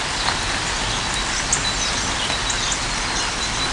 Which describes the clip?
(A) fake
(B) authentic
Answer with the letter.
B